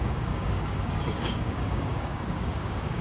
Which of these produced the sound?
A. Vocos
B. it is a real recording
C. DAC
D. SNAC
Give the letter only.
C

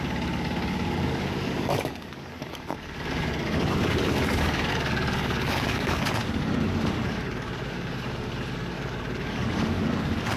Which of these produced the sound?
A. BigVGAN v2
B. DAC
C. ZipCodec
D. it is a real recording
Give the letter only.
B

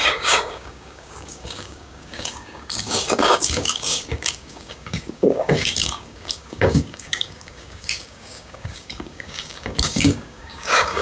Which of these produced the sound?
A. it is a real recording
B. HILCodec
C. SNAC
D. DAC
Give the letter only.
D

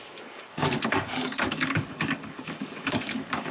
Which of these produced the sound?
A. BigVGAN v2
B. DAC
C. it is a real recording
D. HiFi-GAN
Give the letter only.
B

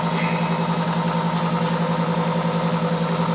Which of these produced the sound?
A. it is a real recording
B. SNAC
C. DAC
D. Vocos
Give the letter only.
A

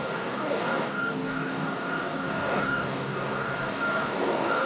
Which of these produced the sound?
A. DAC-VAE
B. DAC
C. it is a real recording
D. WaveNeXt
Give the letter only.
B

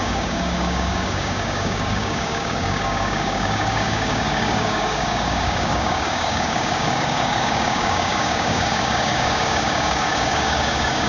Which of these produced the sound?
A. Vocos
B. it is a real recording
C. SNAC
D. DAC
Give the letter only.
D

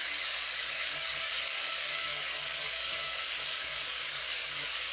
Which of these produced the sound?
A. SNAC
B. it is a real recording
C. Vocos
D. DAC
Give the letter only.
D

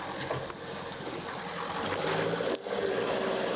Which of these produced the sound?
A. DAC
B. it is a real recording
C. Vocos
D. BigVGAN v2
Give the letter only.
B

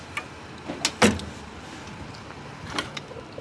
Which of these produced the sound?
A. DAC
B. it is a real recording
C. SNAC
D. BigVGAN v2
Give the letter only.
B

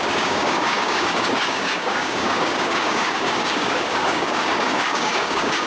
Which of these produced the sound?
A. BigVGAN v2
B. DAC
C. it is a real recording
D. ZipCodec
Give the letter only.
B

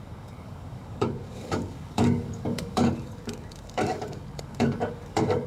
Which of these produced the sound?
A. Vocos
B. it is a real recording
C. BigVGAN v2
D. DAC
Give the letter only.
D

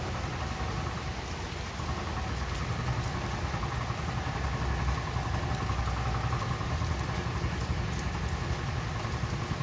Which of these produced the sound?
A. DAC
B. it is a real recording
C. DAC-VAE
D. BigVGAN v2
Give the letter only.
B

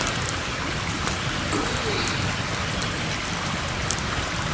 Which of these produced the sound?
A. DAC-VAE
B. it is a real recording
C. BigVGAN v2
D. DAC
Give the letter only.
B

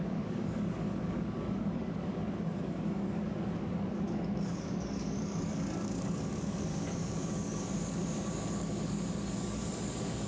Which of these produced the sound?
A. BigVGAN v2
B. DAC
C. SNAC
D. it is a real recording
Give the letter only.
B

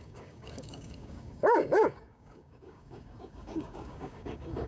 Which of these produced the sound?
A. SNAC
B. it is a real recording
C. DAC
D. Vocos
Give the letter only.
C